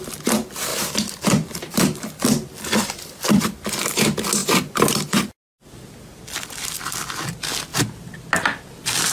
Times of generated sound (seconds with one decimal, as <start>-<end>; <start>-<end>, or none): 0.7-3.7